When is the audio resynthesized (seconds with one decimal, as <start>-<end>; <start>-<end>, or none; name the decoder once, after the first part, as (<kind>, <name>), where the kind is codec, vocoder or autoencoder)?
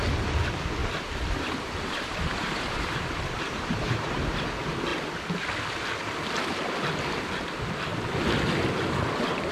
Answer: 0.8-4.4 (vocoder, BigVGAN v2)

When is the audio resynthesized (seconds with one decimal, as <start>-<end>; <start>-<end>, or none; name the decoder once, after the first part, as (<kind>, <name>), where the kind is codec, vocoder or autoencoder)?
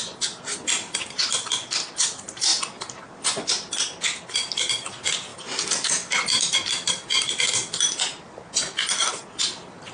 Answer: none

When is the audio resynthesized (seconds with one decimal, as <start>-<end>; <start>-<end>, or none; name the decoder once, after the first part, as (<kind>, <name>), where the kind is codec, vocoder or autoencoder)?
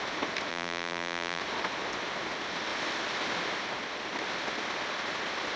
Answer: 0.5-1.4 (vocoder, BigVGAN v2)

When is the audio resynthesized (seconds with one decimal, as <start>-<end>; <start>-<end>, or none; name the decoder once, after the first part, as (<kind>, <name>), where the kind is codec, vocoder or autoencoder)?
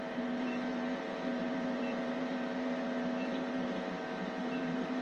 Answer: 0.0-5.0 (vocoder, BigVGAN v2)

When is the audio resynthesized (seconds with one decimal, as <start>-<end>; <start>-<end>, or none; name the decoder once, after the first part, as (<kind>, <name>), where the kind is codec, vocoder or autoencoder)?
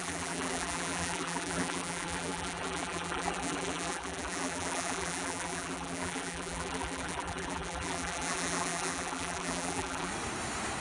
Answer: 0.0-10.1 (vocoder, BigVGAN v2)